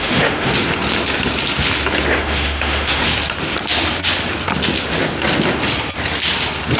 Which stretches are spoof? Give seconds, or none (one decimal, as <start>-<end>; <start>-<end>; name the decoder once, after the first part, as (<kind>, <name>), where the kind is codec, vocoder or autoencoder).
0.0-0.5 (autoencoder, DAC-VAE); 2.2-3.1